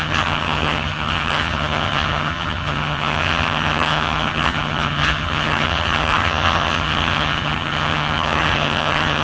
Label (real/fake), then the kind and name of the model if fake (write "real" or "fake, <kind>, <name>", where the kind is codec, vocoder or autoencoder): fake, vocoder, HiFi-GAN